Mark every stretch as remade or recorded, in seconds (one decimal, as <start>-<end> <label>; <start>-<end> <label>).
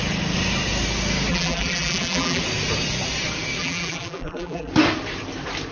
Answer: 0.0-1.3 recorded; 1.3-2.4 remade; 2.4-3.6 recorded; 3.6-4.7 remade; 4.7-5.7 recorded